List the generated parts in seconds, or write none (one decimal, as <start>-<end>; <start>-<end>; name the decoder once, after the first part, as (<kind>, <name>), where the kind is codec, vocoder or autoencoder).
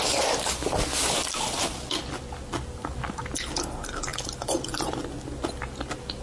1.2-2.0 (vocoder, BigVGAN v2); 4.1-5.0